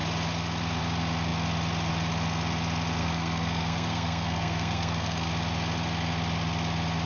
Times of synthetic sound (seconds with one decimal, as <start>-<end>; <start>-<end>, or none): 3.0-5.3